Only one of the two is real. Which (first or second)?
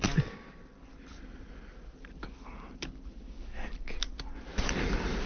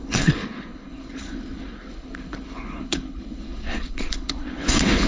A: first